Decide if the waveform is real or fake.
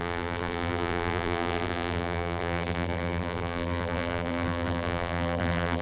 fake